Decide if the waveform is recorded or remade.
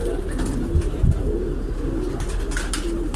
recorded